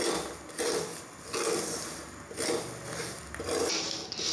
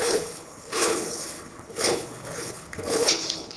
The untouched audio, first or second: first